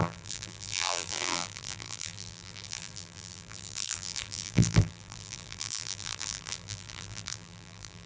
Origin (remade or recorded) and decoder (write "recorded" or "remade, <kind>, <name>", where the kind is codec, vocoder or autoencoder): remade, vocoder, BigVGAN v2